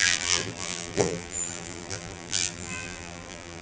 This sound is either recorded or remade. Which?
remade